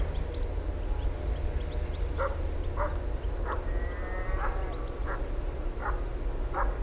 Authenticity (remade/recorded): recorded